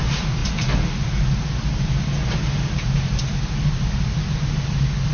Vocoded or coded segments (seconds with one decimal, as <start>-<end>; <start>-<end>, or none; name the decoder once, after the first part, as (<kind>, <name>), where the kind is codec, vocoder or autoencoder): none